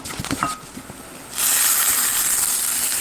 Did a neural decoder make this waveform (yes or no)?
no